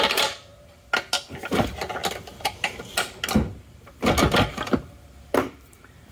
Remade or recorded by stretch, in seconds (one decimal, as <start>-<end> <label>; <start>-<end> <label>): 0.0-0.5 remade; 0.5-1.3 recorded; 1.3-1.9 remade; 1.9-4.5 recorded; 4.5-6.1 remade